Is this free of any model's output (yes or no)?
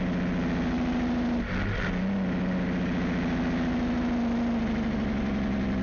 yes